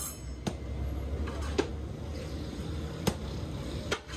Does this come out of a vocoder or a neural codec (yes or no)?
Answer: no